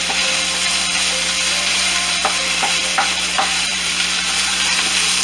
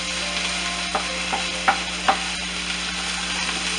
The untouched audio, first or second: second